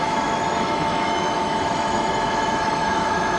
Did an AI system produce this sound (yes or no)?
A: yes